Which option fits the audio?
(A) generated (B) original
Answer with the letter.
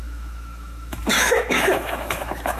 A